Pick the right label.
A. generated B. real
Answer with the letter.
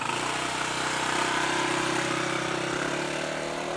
B